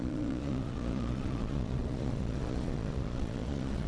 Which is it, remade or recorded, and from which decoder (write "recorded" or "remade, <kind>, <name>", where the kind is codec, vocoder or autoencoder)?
remade, vocoder, Vocos